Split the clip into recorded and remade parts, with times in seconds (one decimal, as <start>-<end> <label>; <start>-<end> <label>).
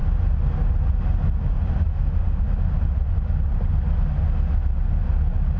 0.0-1.9 recorded; 1.9-2.4 remade; 2.4-5.6 recorded